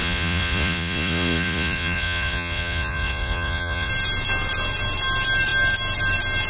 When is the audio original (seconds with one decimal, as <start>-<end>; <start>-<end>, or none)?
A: 3.9-6.5